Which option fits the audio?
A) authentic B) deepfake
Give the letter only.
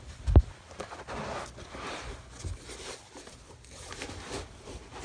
A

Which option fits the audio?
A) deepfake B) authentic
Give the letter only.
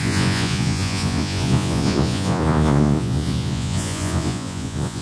A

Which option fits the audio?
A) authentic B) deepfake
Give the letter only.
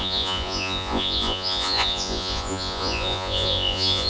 B